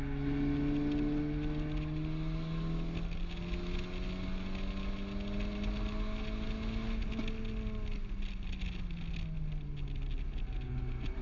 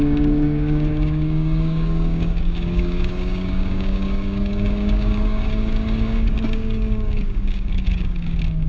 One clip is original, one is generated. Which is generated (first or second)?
second